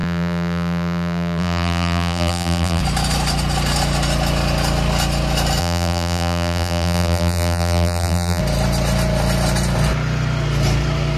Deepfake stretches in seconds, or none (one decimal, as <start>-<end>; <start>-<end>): 0.0-2.8; 5.6-8.4